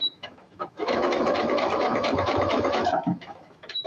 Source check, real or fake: fake